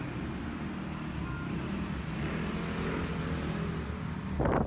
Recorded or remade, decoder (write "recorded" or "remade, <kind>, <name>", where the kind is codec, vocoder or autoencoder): recorded